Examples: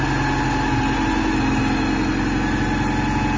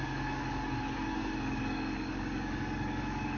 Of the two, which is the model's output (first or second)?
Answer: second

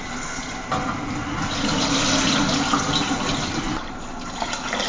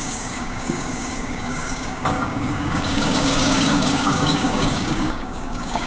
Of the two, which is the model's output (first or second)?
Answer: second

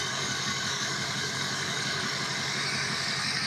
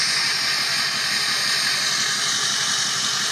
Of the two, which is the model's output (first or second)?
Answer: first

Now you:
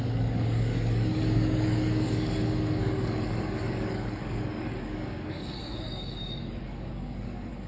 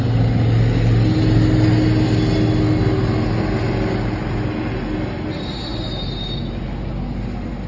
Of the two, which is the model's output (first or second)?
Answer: first